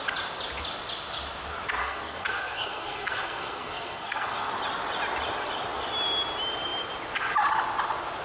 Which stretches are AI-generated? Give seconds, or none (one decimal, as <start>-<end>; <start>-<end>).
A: 1.8-4.5